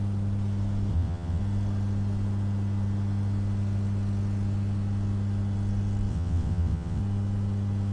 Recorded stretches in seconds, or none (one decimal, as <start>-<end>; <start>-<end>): 0.0-0.9; 1.4-6.1; 7.0-7.9